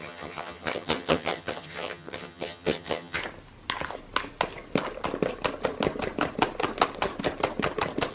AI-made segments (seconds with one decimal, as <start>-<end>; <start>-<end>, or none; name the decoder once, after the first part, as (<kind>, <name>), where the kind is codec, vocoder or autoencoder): 0.0-3.2 (vocoder, HiFi-GAN)